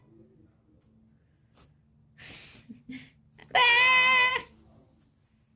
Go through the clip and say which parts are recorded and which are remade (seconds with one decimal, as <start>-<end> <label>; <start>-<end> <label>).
0.0-5.6 recorded